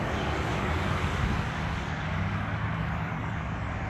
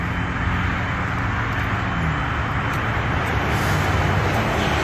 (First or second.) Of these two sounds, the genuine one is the second